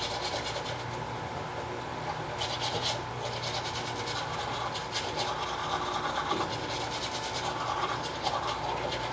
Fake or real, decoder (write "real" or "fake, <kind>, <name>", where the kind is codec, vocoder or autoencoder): real